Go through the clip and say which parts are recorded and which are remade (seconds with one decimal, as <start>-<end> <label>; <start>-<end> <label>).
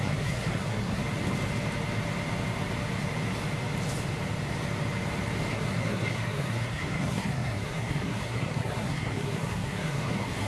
0.0-1.0 remade; 1.0-5.5 recorded; 5.5-10.5 remade